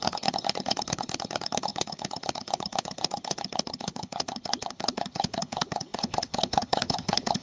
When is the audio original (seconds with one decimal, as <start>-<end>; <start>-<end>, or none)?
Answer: none